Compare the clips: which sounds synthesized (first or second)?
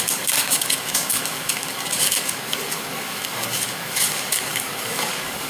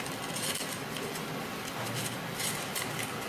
first